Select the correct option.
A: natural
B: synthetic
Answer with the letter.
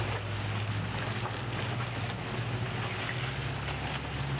A